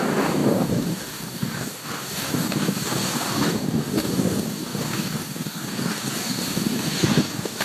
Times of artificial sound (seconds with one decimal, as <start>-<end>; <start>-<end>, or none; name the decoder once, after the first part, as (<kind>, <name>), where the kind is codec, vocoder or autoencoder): 0.0-7.6 (codec, DAC)